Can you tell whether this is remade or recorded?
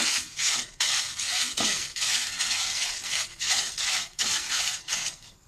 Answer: remade